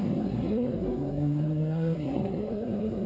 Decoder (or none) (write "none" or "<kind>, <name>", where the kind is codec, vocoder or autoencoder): codec, SNAC